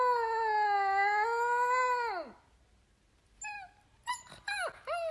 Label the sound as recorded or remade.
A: recorded